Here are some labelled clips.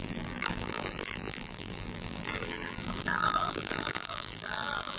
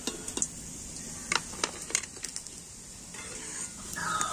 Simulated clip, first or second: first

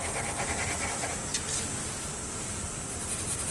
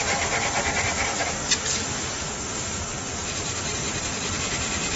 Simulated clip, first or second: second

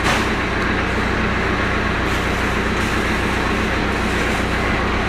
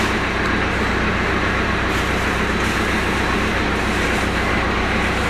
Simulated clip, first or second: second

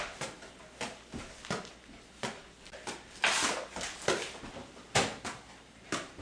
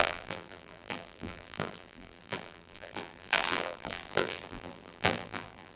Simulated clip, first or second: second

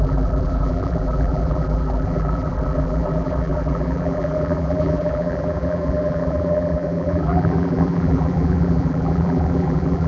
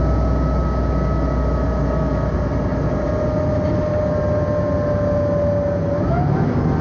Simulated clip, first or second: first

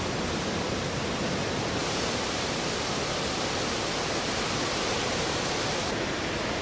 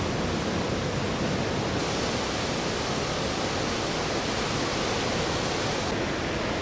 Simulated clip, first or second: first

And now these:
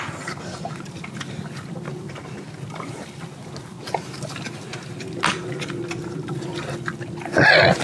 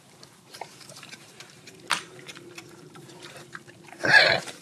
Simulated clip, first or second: second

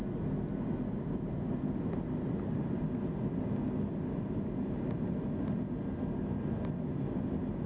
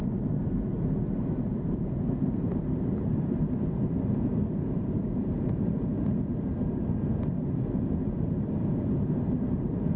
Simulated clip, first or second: second